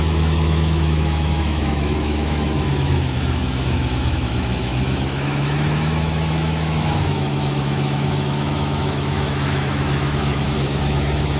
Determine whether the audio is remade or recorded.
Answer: remade